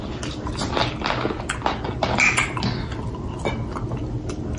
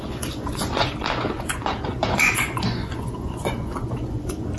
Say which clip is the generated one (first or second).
second